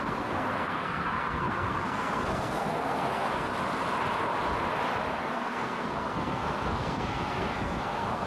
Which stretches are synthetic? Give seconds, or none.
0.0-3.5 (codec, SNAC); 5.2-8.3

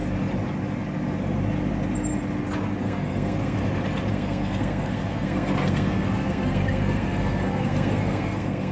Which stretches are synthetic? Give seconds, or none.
2.8-3.6 (codec, SNAC); 4.1-8.7

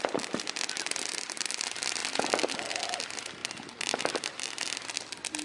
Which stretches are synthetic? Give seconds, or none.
none

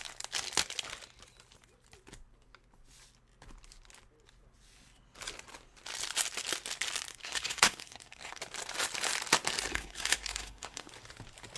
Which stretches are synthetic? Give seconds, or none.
7.1-8.4 (codec, SNAC); 9.7-10.9

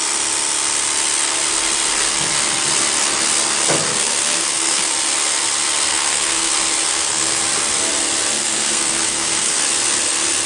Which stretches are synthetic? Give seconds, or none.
3.9-4.9 (codec, SNAC); 5.9-6.5; 6.9-7.4; 8.4-9.6